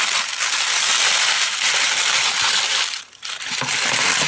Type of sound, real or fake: real